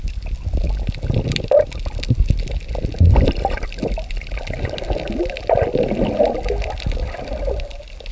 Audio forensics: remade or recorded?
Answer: recorded